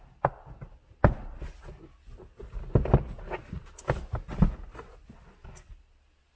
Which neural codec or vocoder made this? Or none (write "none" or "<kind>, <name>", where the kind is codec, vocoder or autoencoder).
none